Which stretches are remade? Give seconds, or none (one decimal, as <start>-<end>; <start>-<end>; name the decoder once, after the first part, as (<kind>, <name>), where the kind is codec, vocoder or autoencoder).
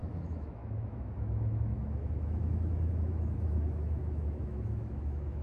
0.0-5.4 (autoencoder, DAC-VAE)